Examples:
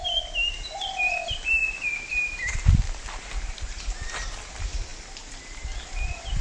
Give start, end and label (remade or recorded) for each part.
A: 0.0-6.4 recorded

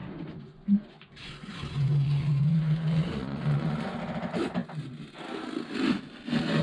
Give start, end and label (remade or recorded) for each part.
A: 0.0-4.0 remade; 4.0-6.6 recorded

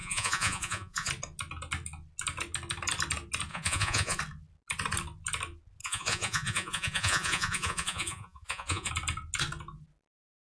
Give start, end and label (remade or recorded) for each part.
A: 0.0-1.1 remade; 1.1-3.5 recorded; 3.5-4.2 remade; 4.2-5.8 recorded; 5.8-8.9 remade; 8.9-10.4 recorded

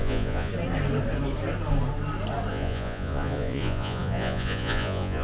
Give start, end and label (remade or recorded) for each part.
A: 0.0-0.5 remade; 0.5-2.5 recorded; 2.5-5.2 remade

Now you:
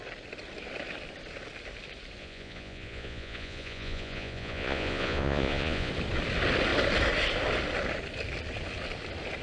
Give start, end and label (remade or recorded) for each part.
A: 0.0-2.2 recorded; 2.2-5.9 remade; 5.9-9.4 recorded